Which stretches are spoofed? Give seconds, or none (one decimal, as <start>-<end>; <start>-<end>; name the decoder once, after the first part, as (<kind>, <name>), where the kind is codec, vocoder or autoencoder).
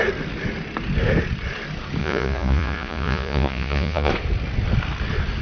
2.0-4.1 (vocoder, Vocos)